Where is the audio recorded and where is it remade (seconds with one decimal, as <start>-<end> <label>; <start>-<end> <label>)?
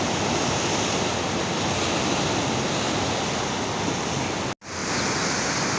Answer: 0.0-5.8 recorded